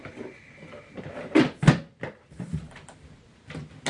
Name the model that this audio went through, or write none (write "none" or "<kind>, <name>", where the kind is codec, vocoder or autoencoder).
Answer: none